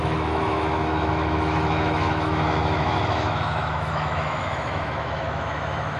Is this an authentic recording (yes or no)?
no